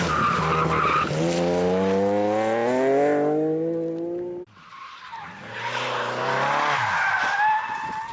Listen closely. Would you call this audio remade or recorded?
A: recorded